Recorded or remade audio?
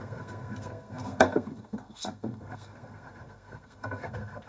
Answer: remade